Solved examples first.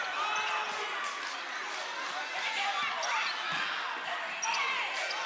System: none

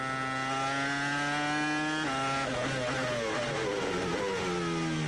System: none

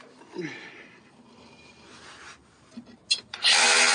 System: none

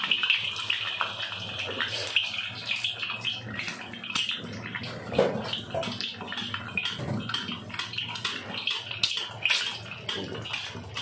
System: none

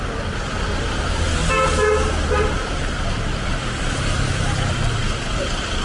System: none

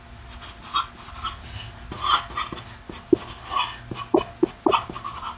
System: none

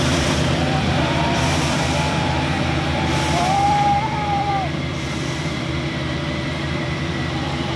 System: vocoder, BigVGAN v2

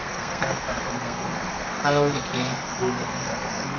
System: codec, SNAC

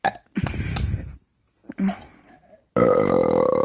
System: none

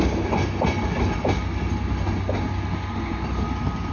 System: none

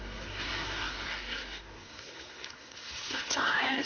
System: codec, SNAC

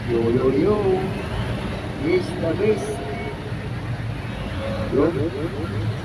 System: none